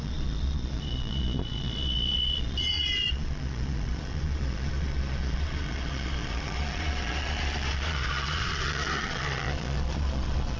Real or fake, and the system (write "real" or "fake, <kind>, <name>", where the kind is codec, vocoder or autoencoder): fake, vocoder, Vocos